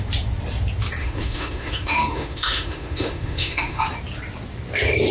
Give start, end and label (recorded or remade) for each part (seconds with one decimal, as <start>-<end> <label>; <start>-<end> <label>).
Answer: 0.0-1.0 recorded; 1.0-3.8 remade; 3.8-5.1 recorded